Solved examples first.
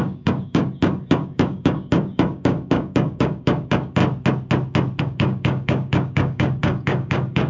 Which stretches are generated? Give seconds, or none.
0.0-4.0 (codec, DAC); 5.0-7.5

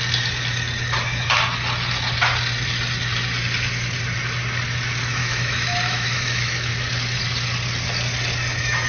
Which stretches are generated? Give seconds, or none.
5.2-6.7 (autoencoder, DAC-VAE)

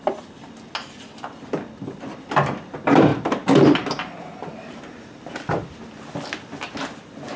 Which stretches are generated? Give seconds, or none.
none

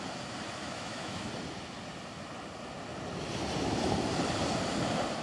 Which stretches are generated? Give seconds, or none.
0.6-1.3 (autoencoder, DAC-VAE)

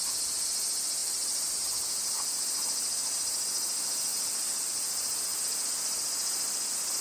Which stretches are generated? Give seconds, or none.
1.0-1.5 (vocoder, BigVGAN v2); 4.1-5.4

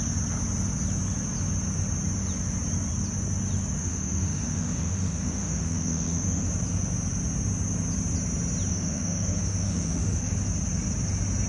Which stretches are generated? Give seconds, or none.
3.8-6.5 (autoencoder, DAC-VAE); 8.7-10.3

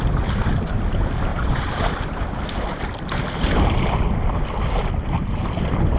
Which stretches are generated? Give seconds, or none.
none